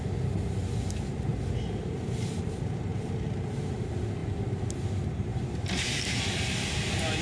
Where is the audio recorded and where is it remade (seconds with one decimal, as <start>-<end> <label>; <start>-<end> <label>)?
0.0-1.3 recorded; 1.3-2.4 remade; 2.4-2.9 recorded; 2.9-3.7 remade; 3.7-4.2 recorded; 4.2-4.7 remade; 4.7-5.3 recorded; 5.3-6.2 remade; 6.2-7.2 recorded